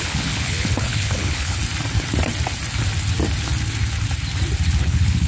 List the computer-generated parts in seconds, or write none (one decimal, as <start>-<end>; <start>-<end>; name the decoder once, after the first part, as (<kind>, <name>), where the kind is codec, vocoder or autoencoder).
0.0-1.6 (codec, HILCodec); 4.8-5.3